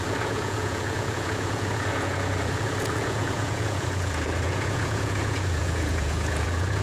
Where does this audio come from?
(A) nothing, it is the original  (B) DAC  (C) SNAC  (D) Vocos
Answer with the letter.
D